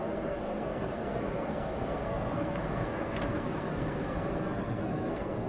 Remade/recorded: remade